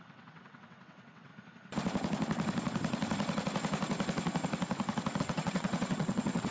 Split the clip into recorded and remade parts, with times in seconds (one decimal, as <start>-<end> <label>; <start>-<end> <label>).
0.0-1.3 remade; 1.3-5.2 recorded; 5.2-6.5 remade